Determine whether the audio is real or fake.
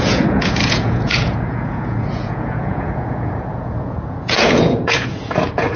fake